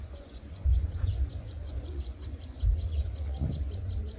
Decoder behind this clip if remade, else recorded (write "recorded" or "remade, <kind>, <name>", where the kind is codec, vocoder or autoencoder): remade, vocoder, Vocos